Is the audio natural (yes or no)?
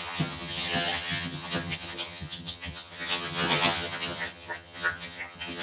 no